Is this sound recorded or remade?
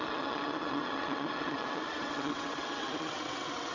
remade